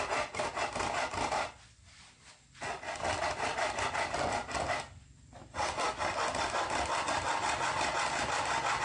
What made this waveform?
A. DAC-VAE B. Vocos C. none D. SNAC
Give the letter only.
C